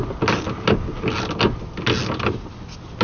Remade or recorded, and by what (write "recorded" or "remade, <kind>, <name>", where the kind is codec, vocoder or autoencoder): recorded